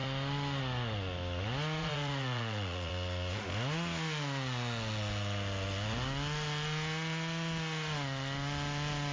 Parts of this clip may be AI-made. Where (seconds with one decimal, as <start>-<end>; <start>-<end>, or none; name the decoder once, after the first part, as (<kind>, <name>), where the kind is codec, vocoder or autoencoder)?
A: 1.8-2.9 (vocoder, Vocos)